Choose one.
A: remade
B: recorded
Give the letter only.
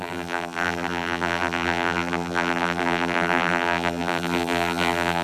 A